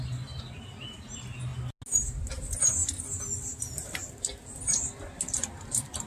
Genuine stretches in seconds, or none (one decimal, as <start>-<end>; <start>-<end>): 0.0-6.1